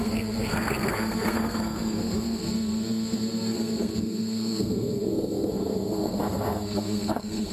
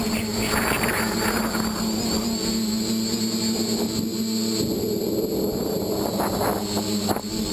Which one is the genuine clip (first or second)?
second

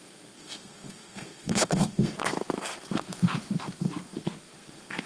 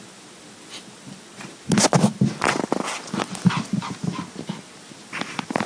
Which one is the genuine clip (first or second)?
second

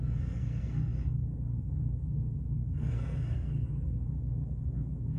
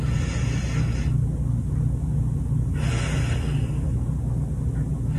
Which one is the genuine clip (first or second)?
second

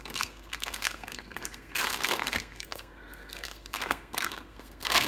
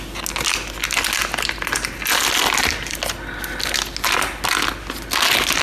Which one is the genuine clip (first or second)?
second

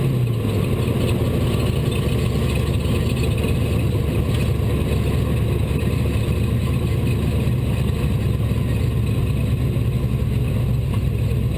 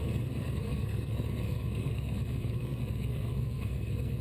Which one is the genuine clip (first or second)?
first